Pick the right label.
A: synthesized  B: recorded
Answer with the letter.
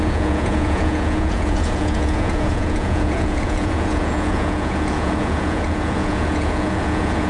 A